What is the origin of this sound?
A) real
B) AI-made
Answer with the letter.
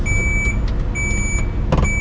A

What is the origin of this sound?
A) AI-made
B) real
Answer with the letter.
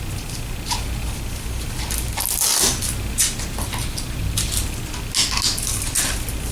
B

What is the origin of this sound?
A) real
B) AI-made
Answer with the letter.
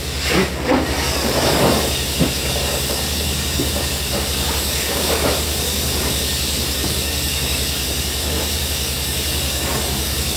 B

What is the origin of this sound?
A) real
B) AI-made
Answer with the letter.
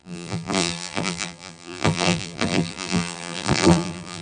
B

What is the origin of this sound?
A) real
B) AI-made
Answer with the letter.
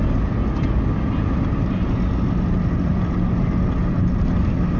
A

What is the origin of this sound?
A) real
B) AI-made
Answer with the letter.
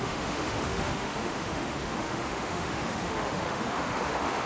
B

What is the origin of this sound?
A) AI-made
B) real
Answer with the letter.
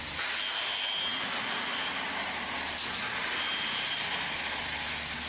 B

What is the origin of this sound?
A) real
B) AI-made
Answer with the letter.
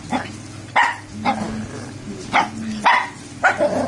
A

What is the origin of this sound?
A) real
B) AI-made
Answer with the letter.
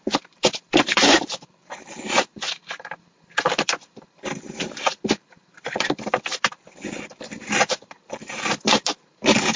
B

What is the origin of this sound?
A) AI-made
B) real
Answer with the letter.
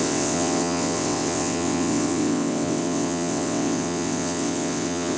A